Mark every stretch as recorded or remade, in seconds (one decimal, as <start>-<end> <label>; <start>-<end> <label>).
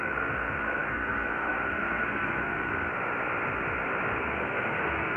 0.0-2.7 remade; 2.7-4.2 recorded; 4.2-5.2 remade